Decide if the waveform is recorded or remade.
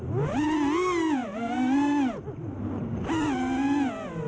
recorded